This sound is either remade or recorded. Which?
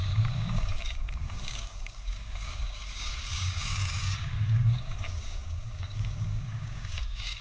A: remade